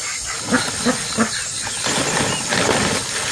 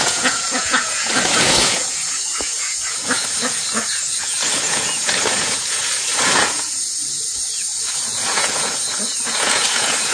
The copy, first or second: second